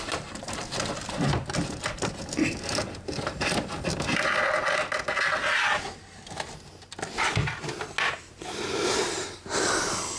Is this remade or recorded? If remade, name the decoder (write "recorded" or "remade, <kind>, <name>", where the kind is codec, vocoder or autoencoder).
recorded